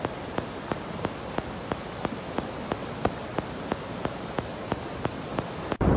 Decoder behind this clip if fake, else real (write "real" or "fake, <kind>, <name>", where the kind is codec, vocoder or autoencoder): real